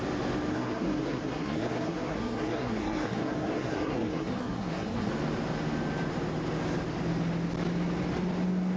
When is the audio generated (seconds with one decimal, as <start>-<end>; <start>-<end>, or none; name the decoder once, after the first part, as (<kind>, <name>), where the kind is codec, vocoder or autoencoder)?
0.5-5.1 (codec, SNAC)